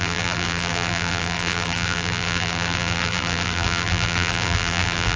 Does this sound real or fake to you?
fake